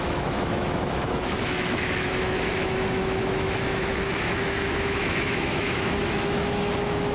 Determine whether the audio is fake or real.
fake